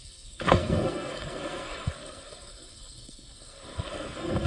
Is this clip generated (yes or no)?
yes